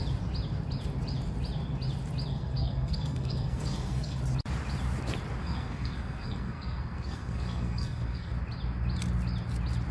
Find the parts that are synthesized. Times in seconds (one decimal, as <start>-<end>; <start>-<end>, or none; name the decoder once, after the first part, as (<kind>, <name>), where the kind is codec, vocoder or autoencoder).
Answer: 2.3-4.2 (codec, SNAC); 5.4-8.3